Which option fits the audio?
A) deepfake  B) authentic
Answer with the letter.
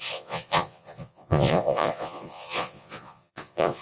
A